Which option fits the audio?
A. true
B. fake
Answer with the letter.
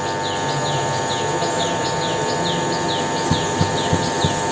A